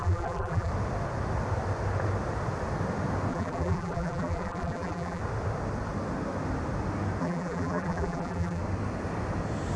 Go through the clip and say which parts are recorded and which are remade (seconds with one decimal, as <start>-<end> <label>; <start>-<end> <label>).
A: 0.0-0.7 remade; 0.7-3.3 recorded; 3.3-5.2 remade; 5.2-7.2 recorded; 7.2-8.6 remade; 8.6-9.8 recorded